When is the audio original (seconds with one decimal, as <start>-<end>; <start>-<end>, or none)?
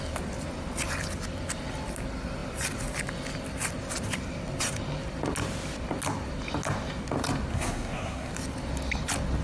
0.0-7.5; 8.3-9.4